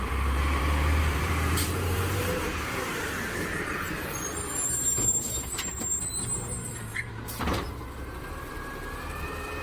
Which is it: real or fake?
fake